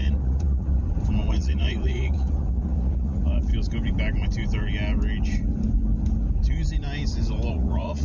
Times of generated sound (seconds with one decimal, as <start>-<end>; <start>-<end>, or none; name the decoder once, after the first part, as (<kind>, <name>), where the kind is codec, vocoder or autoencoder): 0.0-0.8 (vocoder, Vocos); 1.3-3.5; 7.5-8.0